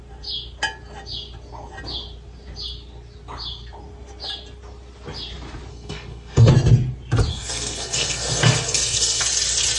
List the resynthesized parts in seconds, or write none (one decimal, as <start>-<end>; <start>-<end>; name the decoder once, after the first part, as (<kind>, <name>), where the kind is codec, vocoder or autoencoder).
5.7-6.5 (codec, SNAC); 7.3-9.2